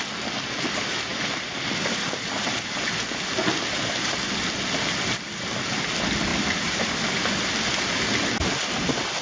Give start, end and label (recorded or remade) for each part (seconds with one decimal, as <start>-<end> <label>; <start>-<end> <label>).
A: 0.0-6.3 recorded; 6.3-7.6 remade; 7.6-9.2 recorded